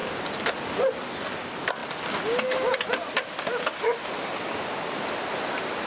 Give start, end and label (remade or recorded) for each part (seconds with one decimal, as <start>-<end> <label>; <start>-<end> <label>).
0.0-5.9 recorded